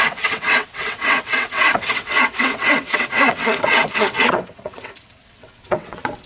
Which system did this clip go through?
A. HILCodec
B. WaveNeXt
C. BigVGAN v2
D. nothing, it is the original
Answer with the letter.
B